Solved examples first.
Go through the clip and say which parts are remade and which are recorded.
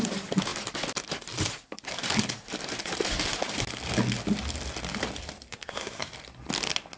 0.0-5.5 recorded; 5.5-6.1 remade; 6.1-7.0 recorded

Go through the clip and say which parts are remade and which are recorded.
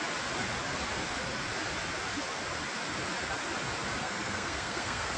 0.0-4.0 recorded; 4.0-5.2 remade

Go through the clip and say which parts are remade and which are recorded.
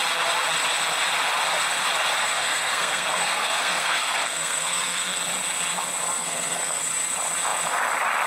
0.0-2.2 recorded; 2.2-5.2 remade; 5.2-6.2 recorded; 6.2-6.8 remade; 6.8-8.3 recorded